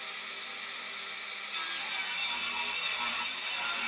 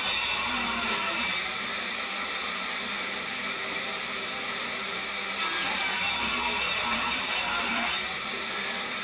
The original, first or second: first